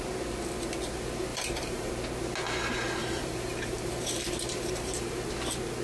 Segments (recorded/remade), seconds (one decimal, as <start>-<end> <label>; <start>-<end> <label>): 0.0-1.3 recorded; 1.3-1.9 remade; 1.9-3.0 recorded; 3.0-5.3 remade; 5.3-5.8 recorded